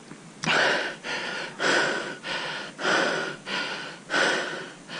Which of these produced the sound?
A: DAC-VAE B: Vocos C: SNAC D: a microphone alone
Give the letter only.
D